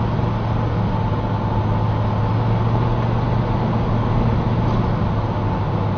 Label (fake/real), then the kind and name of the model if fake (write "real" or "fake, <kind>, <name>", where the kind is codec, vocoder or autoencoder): real